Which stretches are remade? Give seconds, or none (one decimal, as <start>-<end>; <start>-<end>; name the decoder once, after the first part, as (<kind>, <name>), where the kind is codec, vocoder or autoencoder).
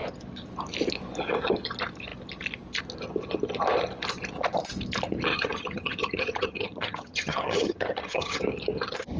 5.3-8.4 (vocoder, HiFi-GAN)